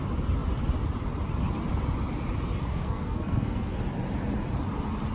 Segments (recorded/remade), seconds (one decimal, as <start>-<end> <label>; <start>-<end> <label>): 0.0-2.7 recorded; 2.7-3.8 remade; 3.8-5.1 recorded